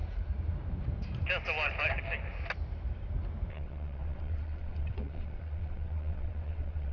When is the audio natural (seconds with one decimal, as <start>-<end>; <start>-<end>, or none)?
0.0-3.5